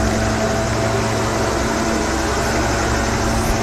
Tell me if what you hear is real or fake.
real